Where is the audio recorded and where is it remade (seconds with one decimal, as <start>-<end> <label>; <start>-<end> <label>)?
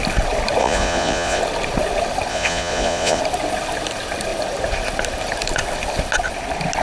0.0-0.6 recorded; 0.6-1.4 remade; 1.4-2.3 recorded; 2.3-3.2 remade; 3.2-6.8 recorded